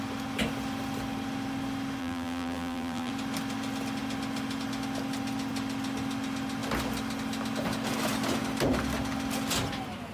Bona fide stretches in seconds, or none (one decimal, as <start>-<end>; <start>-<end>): 0.0-2.0; 3.1-10.1